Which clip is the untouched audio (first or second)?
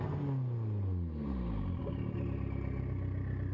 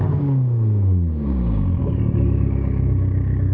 first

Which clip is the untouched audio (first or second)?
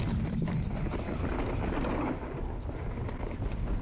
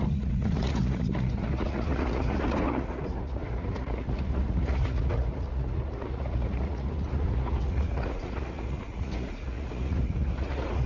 first